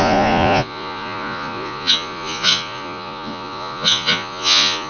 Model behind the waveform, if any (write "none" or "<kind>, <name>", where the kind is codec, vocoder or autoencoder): vocoder, Vocos